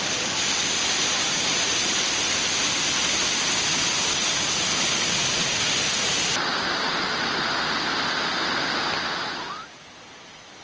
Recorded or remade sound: recorded